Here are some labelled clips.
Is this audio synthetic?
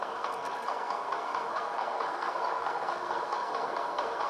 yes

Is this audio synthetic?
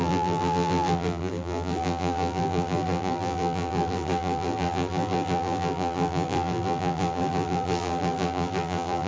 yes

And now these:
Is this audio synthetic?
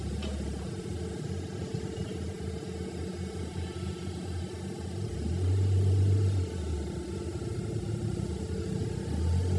no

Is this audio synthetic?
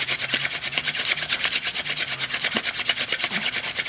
no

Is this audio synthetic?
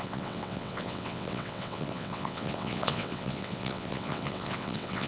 yes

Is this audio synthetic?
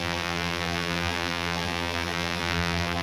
yes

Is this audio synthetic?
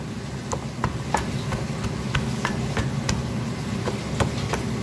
no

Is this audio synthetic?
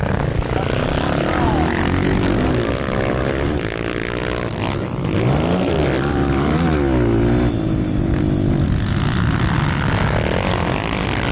no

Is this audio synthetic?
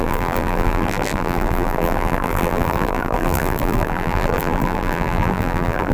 yes